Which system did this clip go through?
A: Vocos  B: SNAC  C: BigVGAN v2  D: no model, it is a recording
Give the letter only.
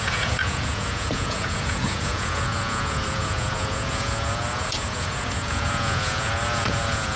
A